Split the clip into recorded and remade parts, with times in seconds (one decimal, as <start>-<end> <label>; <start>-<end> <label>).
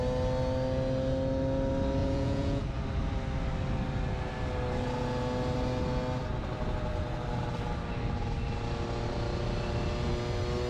0.0-2.0 recorded; 2.0-2.6 remade; 2.6-10.7 recorded